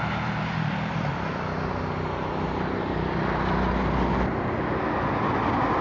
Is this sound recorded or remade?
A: recorded